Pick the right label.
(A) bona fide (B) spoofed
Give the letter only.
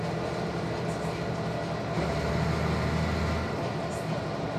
A